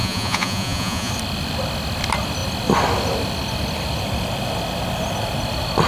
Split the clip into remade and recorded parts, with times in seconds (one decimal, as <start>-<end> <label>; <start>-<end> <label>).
0.0-1.1 remade; 1.1-5.9 recorded

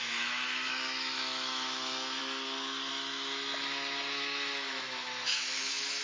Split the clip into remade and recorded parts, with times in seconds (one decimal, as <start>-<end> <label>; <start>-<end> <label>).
0.0-2.2 remade; 2.2-2.9 recorded; 2.9-6.0 remade